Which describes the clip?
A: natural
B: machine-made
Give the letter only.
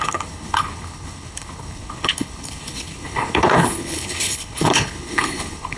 B